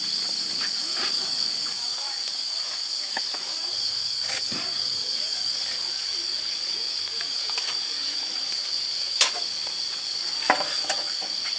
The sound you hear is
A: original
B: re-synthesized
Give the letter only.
B